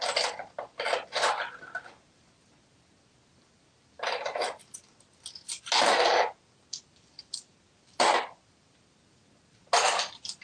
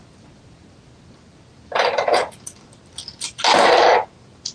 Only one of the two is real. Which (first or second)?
first